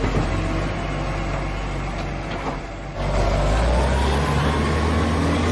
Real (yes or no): yes